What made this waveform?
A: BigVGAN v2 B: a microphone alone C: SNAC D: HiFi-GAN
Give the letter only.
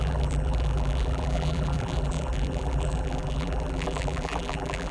A